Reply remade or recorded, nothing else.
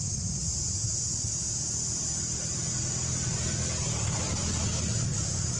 recorded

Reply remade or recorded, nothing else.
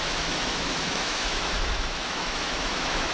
remade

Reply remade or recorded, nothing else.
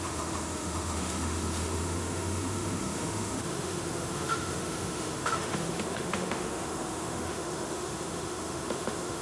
remade